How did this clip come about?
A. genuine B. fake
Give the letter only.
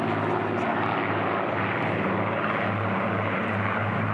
A